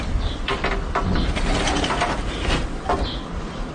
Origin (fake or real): real